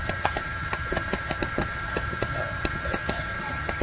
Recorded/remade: remade